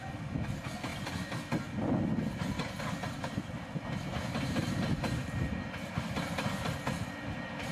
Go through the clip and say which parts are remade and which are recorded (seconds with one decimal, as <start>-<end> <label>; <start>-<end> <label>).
0.0-4.1 recorded; 4.1-5.5 remade; 5.5-7.7 recorded